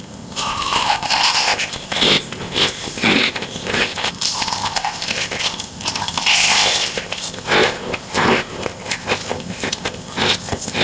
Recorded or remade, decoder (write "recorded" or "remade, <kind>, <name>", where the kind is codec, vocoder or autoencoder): remade, codec, ZipCodec